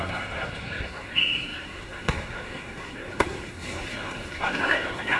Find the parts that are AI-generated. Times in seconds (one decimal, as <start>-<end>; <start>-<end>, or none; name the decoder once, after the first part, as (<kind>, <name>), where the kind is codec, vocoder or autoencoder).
0.0-5.2 (codec, SNAC)